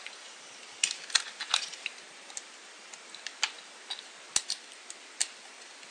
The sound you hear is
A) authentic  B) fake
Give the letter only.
A